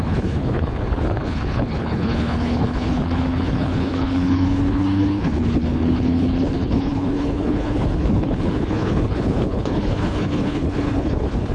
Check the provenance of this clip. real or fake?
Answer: fake